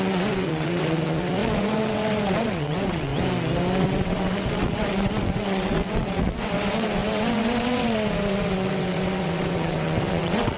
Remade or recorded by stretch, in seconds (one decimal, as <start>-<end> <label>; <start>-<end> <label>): 0.0-3.1 remade; 3.1-3.8 recorded; 3.8-10.6 remade